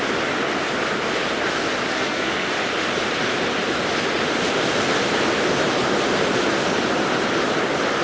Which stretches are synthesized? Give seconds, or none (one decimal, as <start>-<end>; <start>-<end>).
1.9-2.5